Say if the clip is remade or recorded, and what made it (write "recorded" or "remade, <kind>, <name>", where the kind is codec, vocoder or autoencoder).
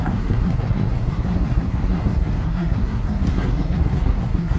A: remade, codec, SNAC